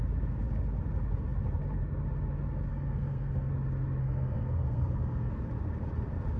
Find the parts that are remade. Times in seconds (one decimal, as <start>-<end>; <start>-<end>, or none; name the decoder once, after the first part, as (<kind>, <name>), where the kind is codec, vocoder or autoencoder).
2.7-3.5 (codec, SNAC); 4.0-5.3

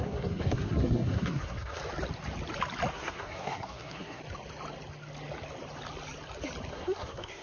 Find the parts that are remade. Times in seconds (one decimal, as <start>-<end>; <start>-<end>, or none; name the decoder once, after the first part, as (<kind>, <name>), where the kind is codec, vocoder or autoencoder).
0.0-1.8 (codec, SNAC); 2.9-4.2; 6.7-7.4